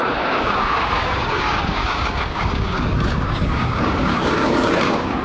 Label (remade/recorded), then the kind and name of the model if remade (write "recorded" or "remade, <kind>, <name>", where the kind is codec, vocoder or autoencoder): remade, codec, DAC